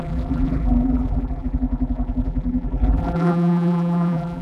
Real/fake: fake